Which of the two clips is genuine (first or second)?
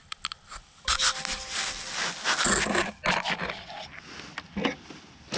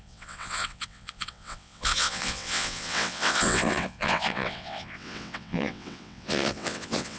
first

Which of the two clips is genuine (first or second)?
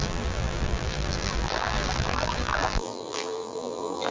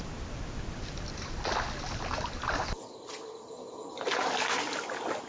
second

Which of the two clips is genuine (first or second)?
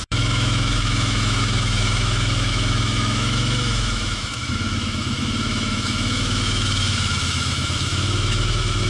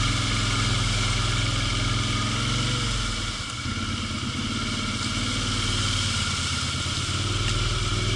second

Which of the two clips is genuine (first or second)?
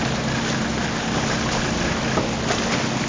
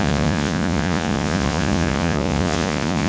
first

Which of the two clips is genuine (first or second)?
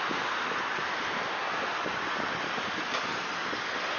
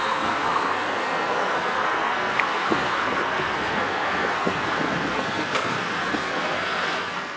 first